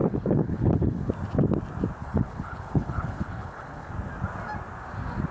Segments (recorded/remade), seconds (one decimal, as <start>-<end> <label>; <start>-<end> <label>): 0.0-1.1 remade; 1.1-2.0 recorded; 2.0-3.9 remade; 3.9-5.3 recorded